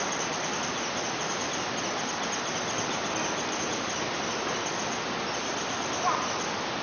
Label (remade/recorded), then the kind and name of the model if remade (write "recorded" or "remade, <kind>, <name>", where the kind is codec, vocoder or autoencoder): recorded